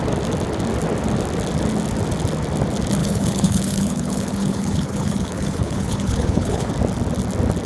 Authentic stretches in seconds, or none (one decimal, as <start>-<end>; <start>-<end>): 0.0-3.0; 6.7-7.7